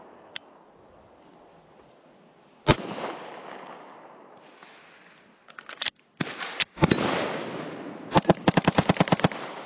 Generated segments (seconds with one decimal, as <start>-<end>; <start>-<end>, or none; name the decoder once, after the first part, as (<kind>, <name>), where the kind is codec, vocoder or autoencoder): none